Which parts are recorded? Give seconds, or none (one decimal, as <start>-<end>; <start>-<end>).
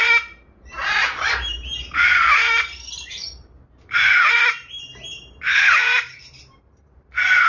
3.2-4.3; 4.9-5.5